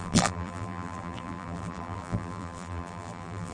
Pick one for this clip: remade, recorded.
remade